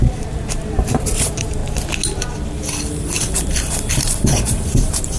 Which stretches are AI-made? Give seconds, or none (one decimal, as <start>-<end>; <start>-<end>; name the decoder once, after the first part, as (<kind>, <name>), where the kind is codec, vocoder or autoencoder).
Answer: 0.0-1.6 (vocoder, BigVGAN v2); 3.9-5.2